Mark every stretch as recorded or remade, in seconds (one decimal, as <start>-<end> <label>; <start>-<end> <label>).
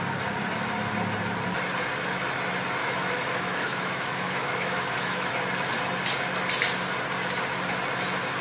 0.0-2.8 recorded; 2.8-5.3 remade; 5.3-8.4 recorded